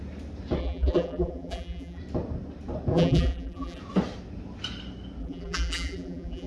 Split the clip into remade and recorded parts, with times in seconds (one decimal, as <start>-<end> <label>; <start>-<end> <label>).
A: 0.0-0.6 recorded; 0.6-2.0 remade; 2.0-2.9 recorded; 2.9-3.8 remade; 3.8-5.2 recorded; 5.2-6.5 remade